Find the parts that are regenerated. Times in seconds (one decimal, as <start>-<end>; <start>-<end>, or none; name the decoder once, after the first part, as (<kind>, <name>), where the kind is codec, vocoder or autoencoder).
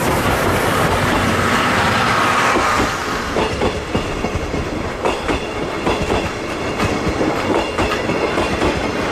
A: 3.0-5.7 (vocoder, BigVGAN v2)